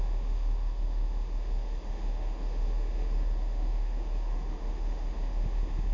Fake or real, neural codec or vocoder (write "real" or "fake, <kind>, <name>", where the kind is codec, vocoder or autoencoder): fake, autoencoder, DAC-VAE